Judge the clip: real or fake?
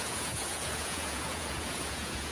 fake